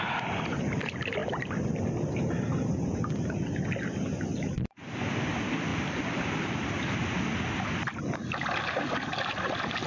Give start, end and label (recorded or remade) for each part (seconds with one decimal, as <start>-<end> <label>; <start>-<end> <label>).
0.0-9.9 recorded